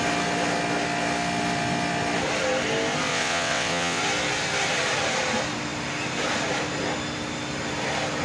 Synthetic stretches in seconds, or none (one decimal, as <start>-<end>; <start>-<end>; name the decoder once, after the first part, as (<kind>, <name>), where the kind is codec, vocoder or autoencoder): 3.1-4.0 (vocoder, WaveNeXt)